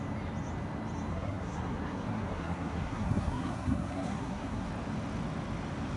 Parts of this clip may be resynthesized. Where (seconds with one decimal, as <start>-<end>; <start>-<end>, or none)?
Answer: 1.1-4.7